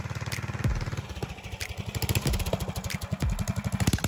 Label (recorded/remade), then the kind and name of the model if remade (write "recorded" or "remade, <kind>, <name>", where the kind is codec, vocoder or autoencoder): recorded